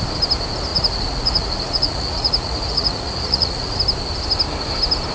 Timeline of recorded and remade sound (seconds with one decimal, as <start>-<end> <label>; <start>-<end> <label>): 0.0-0.7 recorded; 0.7-3.8 remade; 3.8-5.1 recorded